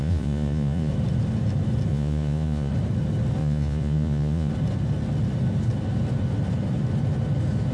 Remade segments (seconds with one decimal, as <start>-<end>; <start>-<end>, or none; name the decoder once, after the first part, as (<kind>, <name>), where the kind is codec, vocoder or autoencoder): 0.0-0.9 (vocoder, Vocos); 1.9-2.7; 3.4-4.5